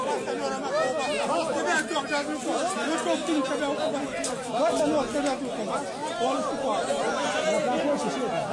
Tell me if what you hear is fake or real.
real